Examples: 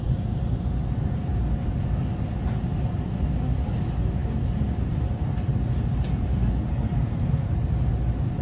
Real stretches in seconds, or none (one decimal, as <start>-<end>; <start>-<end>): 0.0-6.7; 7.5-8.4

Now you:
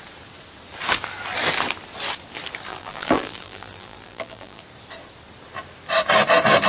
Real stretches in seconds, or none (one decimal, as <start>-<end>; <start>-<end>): 0.0-2.7; 4.6-6.7

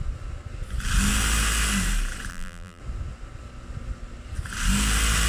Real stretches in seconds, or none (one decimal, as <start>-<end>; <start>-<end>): 0.0-2.3; 2.8-5.3

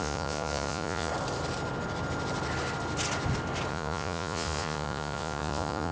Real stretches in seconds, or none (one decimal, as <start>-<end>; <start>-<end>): 1.1-3.7

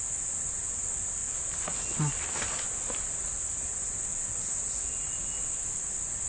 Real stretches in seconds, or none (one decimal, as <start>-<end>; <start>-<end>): 0.0-4.1; 4.6-6.3